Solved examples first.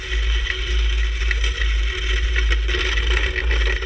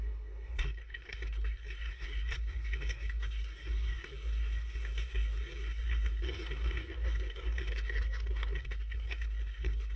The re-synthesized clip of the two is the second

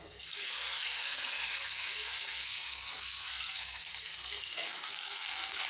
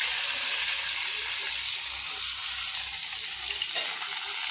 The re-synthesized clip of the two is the first